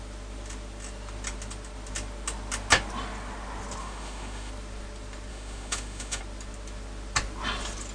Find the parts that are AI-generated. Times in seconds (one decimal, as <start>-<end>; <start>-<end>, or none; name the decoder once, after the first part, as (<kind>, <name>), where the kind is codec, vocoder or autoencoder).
3.8-4.5 (autoencoder, DAC-VAE); 5.3-6.2